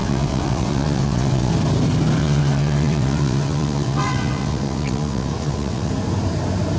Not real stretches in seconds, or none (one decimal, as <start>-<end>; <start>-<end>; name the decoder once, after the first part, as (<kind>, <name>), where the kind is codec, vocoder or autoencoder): 0.0-1.5 (vocoder, WaveNeXt); 2.2-5.9